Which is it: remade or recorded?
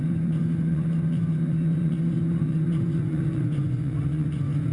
remade